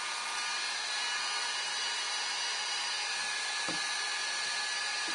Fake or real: real